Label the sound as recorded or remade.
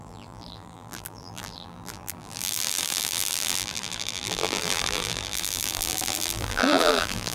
remade